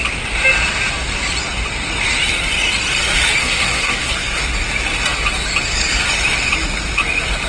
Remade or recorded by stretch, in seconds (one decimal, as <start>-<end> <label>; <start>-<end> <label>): 0.0-3.4 recorded; 3.4-4.4 remade; 4.4-7.5 recorded